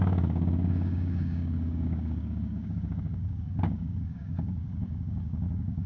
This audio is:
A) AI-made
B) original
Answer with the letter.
A